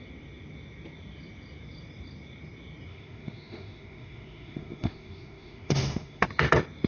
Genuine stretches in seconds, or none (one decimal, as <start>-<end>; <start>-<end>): 0.0-2.9; 6.2-6.9